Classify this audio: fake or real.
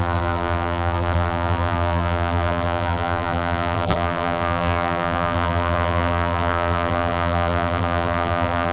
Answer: fake